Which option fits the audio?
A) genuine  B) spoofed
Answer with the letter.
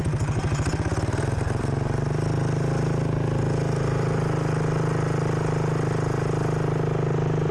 A